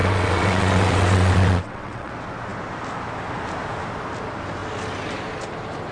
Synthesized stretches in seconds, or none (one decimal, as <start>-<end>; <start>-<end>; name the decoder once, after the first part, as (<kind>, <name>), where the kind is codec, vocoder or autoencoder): 0.0-2.1 (vocoder, WaveNeXt)